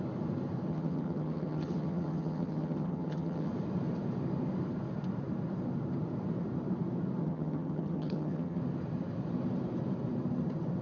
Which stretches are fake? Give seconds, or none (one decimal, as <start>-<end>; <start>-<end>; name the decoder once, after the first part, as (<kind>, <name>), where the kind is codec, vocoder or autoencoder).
0.7-3.5 (vocoder, HiFi-GAN); 7.2-8.6